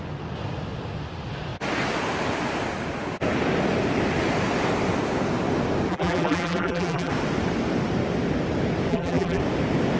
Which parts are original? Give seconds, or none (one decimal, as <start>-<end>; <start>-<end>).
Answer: 0.0-5.9; 7.1-8.9; 9.4-10.0